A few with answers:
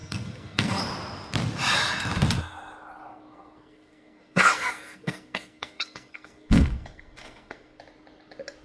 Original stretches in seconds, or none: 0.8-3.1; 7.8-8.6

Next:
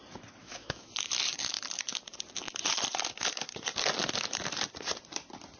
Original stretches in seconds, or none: 0.0-0.4; 0.9-5.6

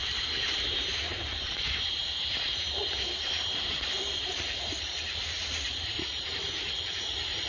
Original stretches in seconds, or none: none

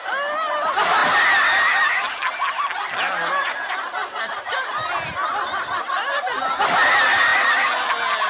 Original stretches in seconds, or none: 0.0-8.3

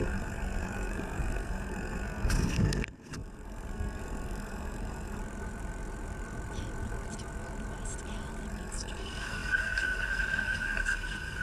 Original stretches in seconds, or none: 5.2-8.5

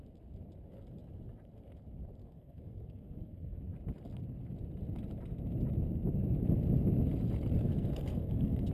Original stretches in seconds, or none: 0.0-2.2; 3.6-7.6